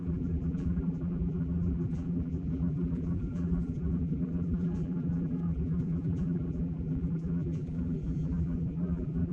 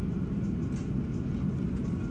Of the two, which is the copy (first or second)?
first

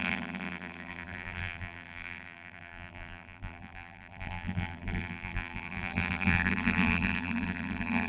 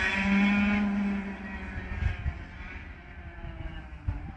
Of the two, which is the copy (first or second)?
first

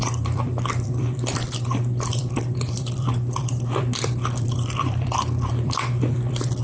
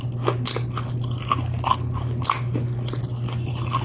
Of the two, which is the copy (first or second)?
first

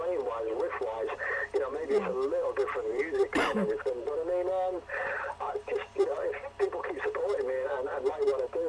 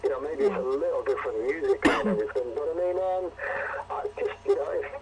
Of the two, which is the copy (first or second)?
first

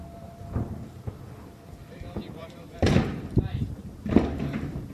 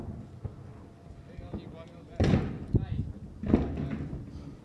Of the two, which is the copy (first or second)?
first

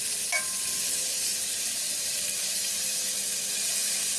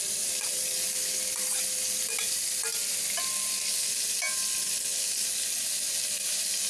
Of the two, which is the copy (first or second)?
first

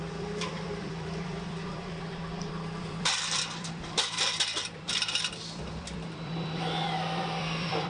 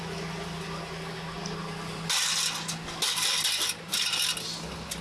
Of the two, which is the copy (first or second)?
first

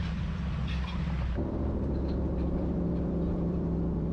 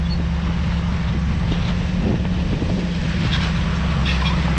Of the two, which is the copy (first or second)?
first